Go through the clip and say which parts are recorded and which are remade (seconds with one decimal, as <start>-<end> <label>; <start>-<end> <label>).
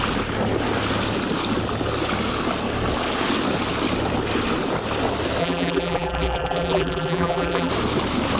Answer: 0.0-5.4 recorded; 5.4-7.7 remade; 7.7-8.4 recorded